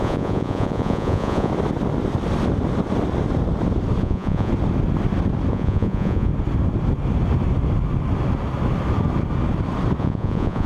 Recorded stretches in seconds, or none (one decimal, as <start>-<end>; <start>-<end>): 1.5-4.0; 4.5-5.5; 6.3-10.0